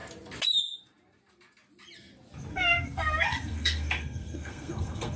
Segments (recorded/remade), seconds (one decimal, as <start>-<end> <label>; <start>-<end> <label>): 0.0-2.5 recorded; 2.5-5.2 remade